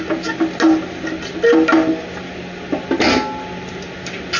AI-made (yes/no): no